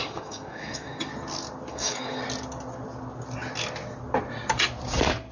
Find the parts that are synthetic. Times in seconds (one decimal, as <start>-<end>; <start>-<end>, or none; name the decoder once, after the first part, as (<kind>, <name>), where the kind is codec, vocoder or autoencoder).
0.0-1.1 (codec, DAC); 1.7-2.2